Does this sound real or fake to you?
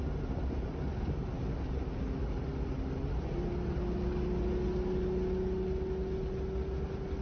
real